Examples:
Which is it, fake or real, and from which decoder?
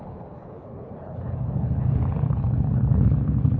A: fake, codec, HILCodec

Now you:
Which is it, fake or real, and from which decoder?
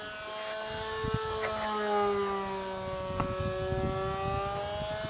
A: real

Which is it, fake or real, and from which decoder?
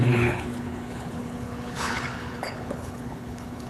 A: fake, codec, HILCodec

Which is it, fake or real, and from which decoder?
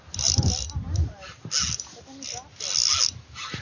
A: real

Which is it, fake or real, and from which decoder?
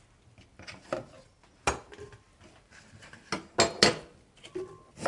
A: real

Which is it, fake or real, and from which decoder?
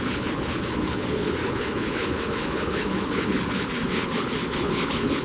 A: fake, codec, HILCodec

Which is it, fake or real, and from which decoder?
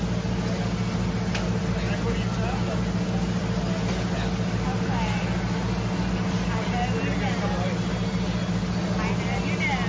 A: real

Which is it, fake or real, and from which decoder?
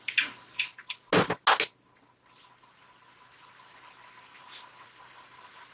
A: real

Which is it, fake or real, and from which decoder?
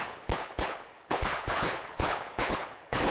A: fake, codec, HILCodec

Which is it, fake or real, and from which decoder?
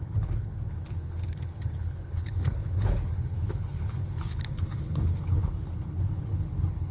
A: fake, codec, HILCodec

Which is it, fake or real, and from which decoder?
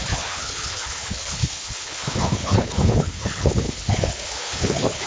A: fake, codec, HILCodec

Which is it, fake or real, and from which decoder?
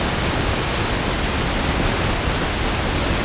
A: real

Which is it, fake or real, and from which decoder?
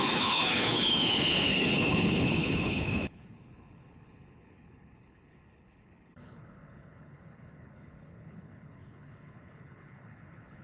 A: fake, codec, HILCodec